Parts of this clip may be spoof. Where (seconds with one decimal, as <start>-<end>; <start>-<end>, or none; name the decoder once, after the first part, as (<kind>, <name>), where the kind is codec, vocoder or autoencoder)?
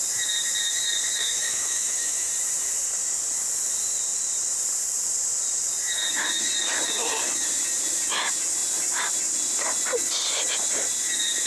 1.2-2.3 (autoencoder, DAC-VAE)